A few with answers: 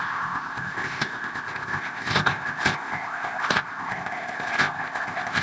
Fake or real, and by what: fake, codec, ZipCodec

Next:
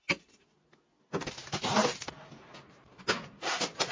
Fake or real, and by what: real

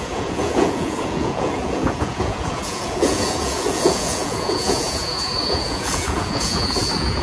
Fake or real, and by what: fake, vocoder, Vocos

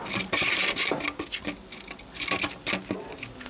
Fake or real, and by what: real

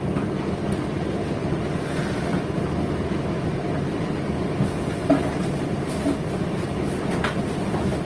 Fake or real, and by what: real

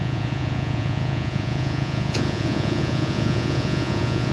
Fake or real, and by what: fake, vocoder, Vocos